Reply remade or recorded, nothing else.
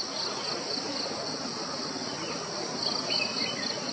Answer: recorded